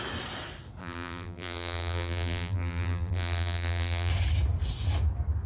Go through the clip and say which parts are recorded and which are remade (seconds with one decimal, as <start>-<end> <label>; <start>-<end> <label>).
0.0-0.8 recorded; 0.8-4.1 remade; 4.1-5.5 recorded